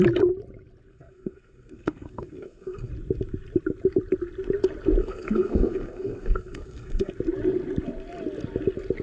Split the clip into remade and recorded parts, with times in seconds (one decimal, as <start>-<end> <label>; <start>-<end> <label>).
0.0-0.9 recorded; 0.9-2.9 remade; 2.9-5.0 recorded; 5.0-7.1 remade; 7.1-9.0 recorded